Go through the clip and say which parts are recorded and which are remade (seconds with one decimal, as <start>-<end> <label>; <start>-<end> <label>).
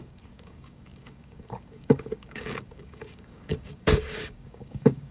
0.0-5.1 remade